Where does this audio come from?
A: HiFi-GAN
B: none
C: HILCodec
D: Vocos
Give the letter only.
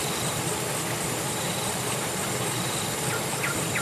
B